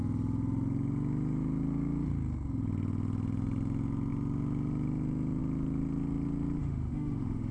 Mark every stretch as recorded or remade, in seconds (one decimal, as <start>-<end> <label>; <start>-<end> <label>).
0.0-6.6 recorded; 6.6-7.5 remade